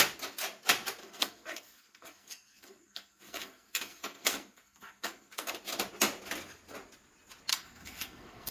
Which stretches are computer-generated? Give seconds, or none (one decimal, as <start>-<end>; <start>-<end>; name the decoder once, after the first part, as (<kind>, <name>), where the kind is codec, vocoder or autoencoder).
1.0-5.5 (codec, SNAC); 7.5-8.5